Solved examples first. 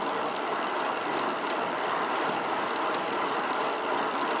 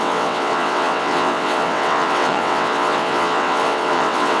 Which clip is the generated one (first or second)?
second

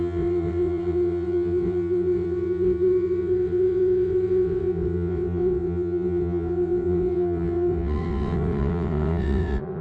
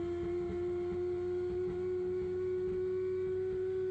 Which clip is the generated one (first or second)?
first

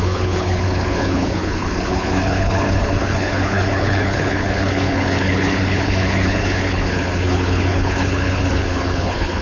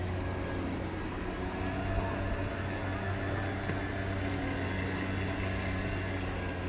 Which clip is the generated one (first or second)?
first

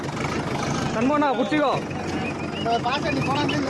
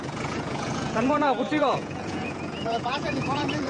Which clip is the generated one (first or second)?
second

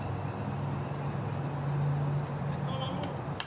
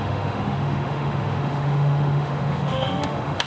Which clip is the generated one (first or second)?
second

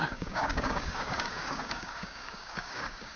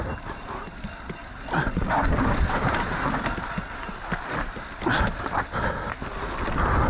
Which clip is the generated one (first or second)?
first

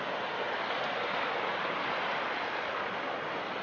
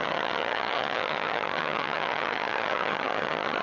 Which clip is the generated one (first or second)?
second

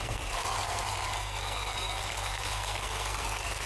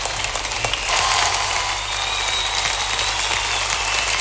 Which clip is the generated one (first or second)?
first